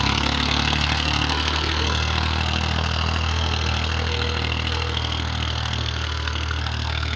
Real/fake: fake